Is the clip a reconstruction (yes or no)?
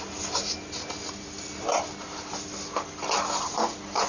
no